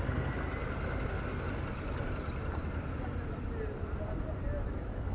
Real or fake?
real